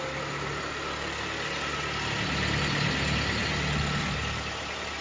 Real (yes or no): yes